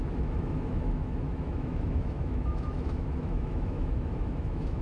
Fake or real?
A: fake